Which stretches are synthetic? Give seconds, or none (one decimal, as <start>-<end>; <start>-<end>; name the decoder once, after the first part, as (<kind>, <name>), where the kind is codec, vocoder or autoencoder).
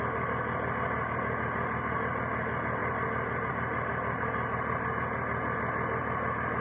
none